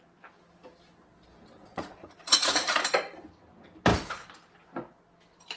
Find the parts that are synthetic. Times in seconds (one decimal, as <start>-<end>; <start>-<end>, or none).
1.6-2.7